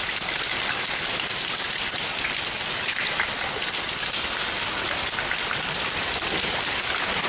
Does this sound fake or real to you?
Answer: real